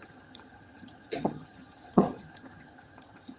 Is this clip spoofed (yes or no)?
yes